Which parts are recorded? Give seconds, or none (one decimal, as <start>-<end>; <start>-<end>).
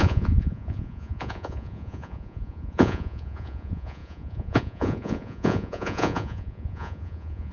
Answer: none